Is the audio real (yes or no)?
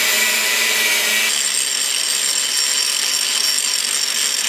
yes